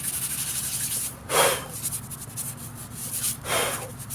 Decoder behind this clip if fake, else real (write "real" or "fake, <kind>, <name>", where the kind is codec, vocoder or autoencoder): real